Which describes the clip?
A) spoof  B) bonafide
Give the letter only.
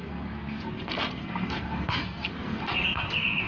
A